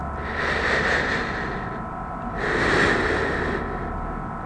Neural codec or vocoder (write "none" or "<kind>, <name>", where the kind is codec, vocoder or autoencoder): none